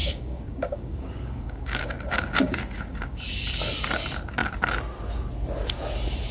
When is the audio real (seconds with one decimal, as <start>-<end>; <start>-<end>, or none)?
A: 3.6-6.3